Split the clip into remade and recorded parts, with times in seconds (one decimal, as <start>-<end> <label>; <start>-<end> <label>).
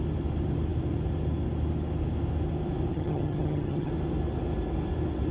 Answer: 0.0-2.9 recorded; 2.9-3.9 remade; 3.9-5.3 recorded